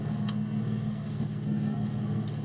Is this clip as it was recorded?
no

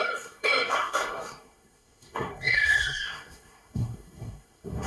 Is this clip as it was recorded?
no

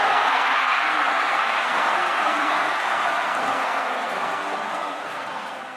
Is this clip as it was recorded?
no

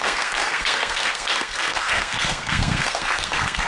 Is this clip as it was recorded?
no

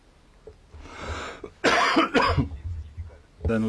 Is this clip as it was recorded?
yes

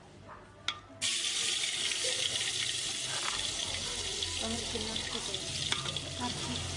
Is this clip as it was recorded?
yes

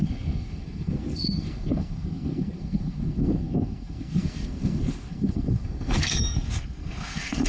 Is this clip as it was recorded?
no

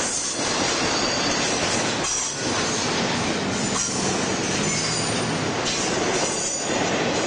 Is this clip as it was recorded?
yes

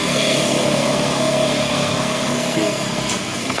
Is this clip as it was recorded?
no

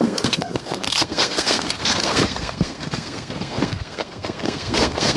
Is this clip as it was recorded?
no